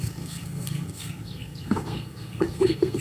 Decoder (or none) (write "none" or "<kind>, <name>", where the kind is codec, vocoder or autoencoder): codec, SNAC